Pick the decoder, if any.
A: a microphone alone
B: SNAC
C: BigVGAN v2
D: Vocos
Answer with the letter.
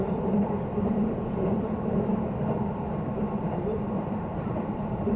C